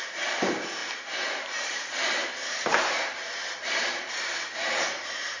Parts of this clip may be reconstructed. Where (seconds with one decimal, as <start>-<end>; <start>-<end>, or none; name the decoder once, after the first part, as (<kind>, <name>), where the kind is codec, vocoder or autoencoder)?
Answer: 0.0-0.8 (vocoder, BigVGAN v2); 1.6-5.4